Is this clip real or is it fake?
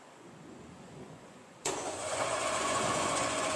fake